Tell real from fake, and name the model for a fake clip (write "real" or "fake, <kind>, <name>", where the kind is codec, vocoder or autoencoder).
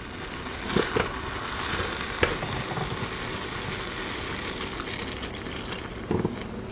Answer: real